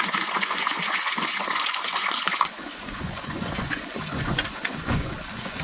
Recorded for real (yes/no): no